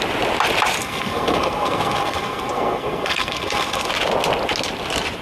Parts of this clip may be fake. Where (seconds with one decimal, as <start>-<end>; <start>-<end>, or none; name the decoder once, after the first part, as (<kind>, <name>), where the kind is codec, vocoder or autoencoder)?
0.8-3.9 (codec, SNAC)